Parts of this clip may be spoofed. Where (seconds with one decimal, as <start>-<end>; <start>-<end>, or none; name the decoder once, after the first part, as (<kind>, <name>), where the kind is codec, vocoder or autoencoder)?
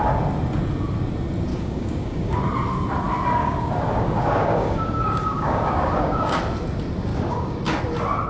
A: 1.5-2.4 (codec, DAC); 3.4-6.4; 7.1-7.8